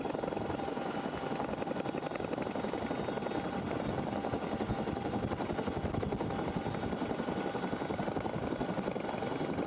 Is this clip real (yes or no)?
yes